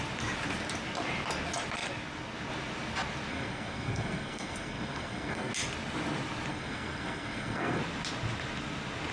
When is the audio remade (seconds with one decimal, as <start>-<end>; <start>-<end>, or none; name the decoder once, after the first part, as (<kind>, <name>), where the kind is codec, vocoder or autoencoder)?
3.3-5.5 (codec, SNAC); 6.5-7.8